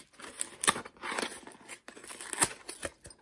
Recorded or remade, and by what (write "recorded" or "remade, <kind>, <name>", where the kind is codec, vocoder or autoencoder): recorded